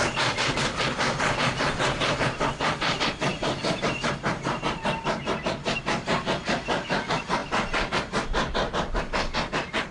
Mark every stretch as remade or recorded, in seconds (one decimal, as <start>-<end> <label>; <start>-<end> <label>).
0.0-3.3 recorded; 3.3-5.3 remade; 5.3-9.9 recorded